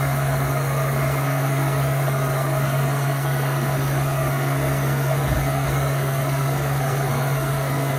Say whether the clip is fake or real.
fake